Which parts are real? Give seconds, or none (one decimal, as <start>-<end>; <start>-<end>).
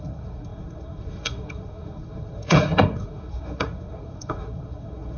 none